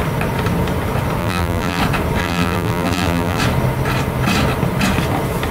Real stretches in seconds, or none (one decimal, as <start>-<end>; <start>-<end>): 0.0-1.2; 1.8-2.2; 3.4-5.5